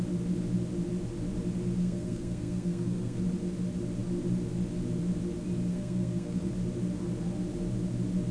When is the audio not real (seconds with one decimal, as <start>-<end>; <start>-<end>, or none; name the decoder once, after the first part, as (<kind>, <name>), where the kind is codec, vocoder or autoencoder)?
1.8-3.2 (codec, SNAC); 5.7-6.5

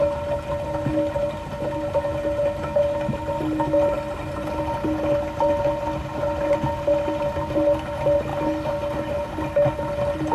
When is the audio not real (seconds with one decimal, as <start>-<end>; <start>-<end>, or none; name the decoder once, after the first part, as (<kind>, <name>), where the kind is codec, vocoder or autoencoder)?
none

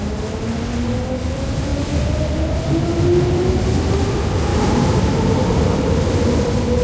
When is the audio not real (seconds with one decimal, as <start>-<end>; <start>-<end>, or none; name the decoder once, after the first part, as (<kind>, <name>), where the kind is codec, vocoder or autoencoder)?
4.5-5.0 (vocoder, BigVGAN v2)

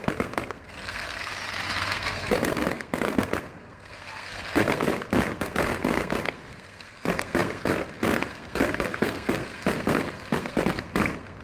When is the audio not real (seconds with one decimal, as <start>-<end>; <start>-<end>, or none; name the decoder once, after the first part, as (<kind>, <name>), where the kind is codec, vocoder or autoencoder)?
0.0-1.3 (codec, SNAC); 1.8-11.4

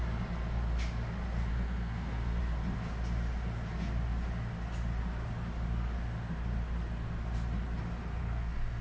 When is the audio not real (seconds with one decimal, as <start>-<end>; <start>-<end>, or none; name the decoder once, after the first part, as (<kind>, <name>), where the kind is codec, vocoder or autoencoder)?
1.5-2.4 (codec, SNAC); 8.2-8.8

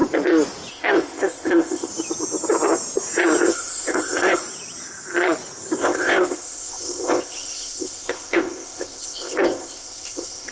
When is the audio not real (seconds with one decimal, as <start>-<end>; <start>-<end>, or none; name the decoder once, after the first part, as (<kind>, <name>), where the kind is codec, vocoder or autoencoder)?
0.7-1.9 (codec, ZipCodec); 3.5-4.4; 5.8-10.5

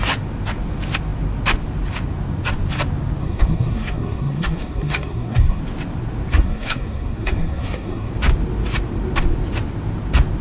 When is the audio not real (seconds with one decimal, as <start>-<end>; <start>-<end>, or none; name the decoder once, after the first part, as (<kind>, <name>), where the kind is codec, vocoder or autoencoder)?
3.2-5.6 (codec, SNAC); 6.3-8.1